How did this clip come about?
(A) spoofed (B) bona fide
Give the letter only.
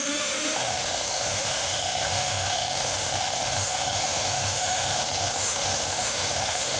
A